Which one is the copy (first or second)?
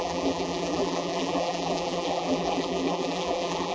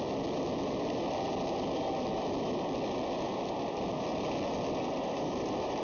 first